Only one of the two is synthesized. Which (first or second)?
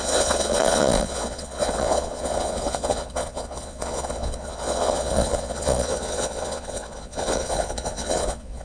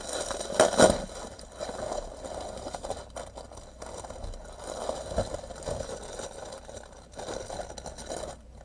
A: first